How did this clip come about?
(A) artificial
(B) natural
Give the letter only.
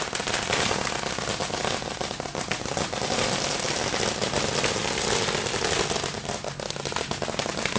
B